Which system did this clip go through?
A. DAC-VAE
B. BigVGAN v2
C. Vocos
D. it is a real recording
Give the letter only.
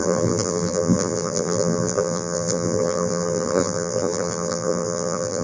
B